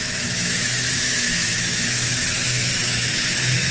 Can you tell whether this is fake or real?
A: fake